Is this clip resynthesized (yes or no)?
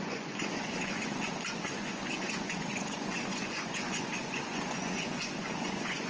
yes